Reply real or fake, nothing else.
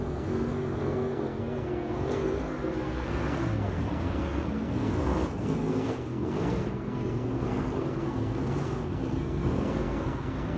fake